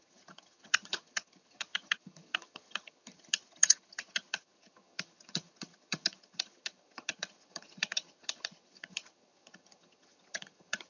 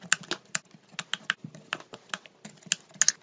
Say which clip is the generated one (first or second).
first